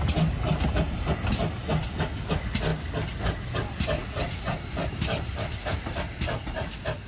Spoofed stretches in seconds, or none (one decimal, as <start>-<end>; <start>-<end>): none